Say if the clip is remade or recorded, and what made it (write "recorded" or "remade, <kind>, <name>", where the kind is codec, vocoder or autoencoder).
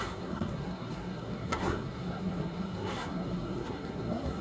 remade, codec, SNAC